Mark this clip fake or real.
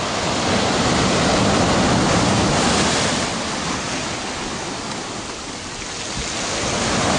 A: real